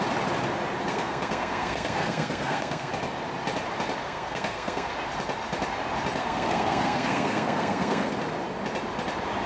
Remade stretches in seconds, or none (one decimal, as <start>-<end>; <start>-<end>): 0.9-2.9; 4.0-4.9; 6.2-8.1